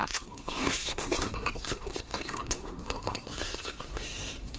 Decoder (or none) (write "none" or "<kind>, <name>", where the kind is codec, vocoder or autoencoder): codec, SNAC